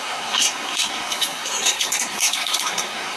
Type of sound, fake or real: fake